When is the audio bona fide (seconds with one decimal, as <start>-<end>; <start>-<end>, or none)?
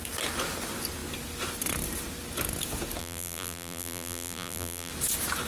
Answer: 0.0-3.0; 4.9-5.5